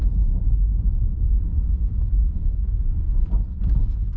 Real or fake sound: real